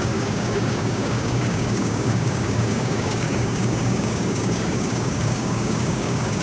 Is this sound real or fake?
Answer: fake